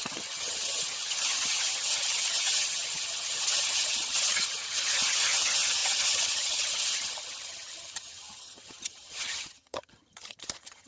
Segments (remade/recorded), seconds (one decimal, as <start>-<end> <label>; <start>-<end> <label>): 0.0-10.9 remade